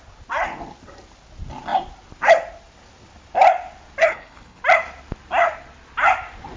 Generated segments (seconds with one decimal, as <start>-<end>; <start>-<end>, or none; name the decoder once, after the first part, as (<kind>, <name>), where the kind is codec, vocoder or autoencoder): 4.0-4.6 (codec, HILCodec)